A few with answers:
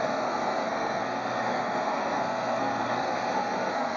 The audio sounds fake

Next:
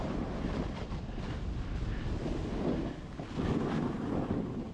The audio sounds real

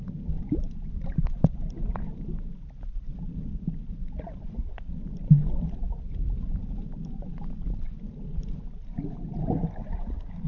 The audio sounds real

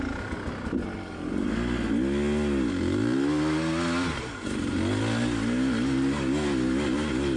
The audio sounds real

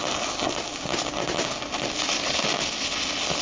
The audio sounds real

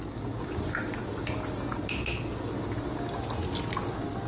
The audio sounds real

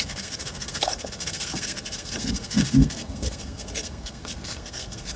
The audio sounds fake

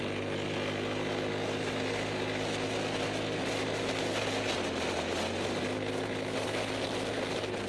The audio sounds real